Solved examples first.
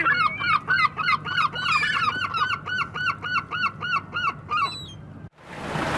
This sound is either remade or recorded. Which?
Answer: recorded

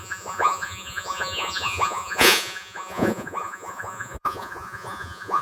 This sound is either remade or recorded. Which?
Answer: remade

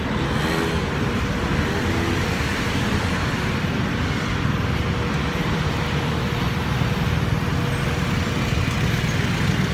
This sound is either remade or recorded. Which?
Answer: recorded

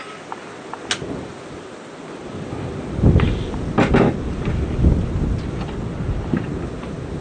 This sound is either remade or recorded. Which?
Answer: recorded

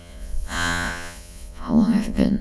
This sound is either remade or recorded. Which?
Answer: remade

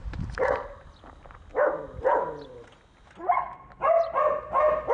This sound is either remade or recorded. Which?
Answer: recorded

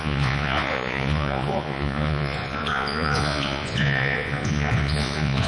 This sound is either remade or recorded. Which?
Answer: remade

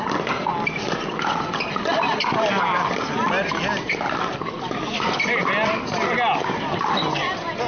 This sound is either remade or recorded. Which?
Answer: recorded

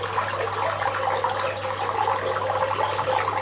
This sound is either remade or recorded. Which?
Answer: recorded